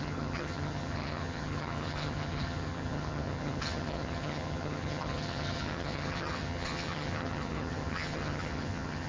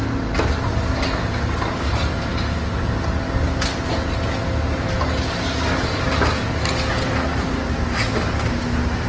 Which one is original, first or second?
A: second